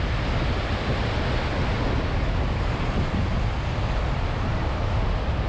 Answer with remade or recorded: recorded